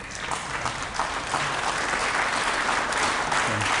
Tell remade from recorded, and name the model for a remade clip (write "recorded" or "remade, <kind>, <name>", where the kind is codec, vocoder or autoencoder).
recorded